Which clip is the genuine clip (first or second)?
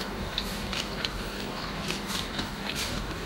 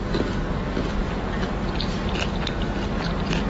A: second